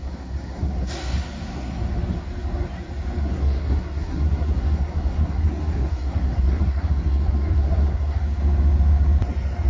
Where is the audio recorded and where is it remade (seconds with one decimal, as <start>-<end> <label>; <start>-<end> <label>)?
0.0-1.8 remade; 1.8-3.2 recorded; 3.2-8.2 remade; 8.2-9.7 recorded